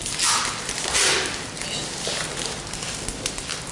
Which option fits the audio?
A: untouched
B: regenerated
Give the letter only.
B